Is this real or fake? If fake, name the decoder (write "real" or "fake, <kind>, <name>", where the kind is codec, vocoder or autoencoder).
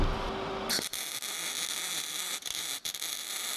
real